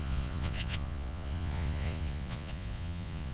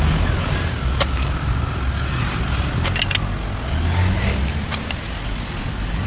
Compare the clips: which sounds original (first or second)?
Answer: second